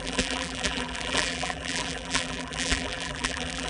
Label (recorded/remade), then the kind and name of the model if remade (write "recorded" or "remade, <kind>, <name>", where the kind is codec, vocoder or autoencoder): remade, vocoder, BigVGAN v2